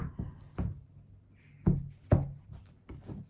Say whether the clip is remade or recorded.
recorded